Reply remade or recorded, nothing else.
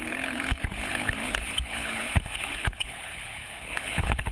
remade